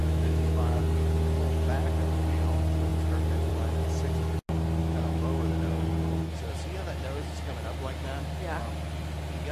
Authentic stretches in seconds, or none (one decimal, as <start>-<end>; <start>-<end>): 0.8-4.8; 5.5-9.5